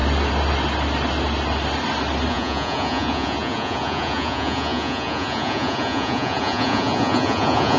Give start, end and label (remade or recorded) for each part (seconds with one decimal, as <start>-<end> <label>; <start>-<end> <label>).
0.0-2.3 recorded; 2.3-7.8 remade